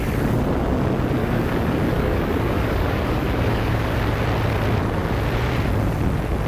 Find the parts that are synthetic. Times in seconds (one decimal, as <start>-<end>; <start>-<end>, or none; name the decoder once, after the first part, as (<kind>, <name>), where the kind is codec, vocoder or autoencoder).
1.2-4.0 (codec, DAC)